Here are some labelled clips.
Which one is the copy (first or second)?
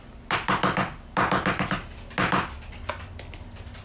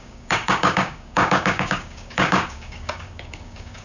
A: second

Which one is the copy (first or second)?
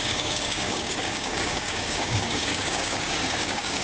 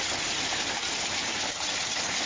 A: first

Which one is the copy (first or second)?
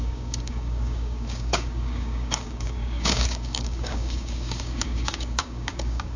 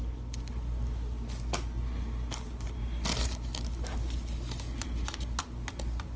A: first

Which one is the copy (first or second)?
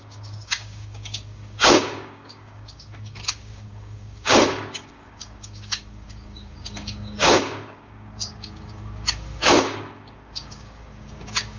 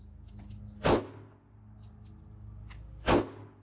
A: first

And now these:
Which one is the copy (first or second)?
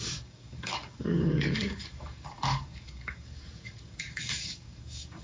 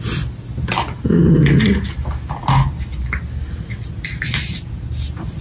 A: first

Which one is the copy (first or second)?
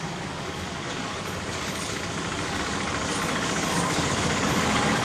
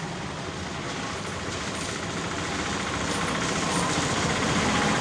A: first